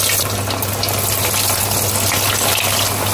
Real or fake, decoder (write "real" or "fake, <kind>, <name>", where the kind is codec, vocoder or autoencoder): real